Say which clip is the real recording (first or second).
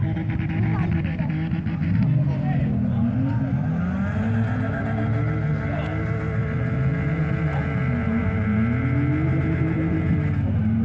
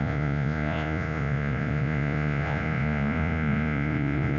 first